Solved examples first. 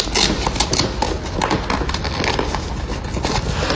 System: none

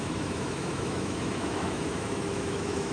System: autoencoder, DAC-VAE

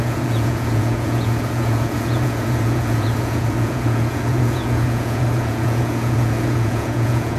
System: vocoder, Vocos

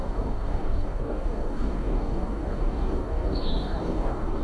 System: codec, DAC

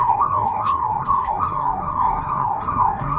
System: codec, SNAC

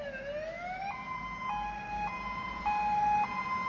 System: none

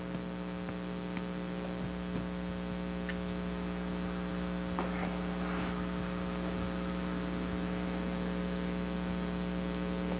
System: none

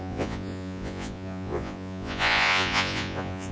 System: vocoder, Vocos